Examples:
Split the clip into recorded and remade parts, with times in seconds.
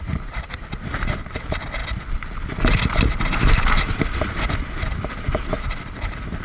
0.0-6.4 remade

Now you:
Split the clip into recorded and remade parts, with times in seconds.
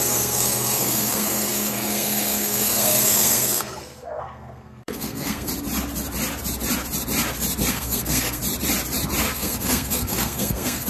0.0-5.5 remade; 5.5-7.7 recorded; 7.7-8.4 remade; 8.4-9.2 recorded; 9.2-10.9 remade